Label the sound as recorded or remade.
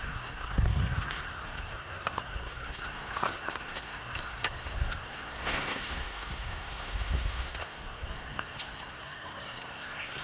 remade